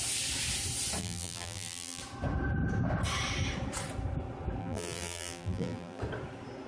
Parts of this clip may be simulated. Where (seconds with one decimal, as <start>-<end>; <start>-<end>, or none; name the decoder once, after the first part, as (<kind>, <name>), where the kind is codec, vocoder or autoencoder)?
1.0-2.0 (vocoder, BigVGAN v2); 4.6-6.0